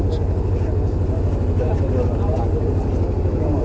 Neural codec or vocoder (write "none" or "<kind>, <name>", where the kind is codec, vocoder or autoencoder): none